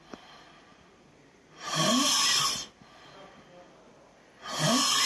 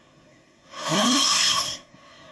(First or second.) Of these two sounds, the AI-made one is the second